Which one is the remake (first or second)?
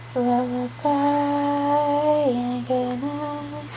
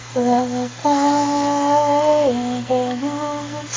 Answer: second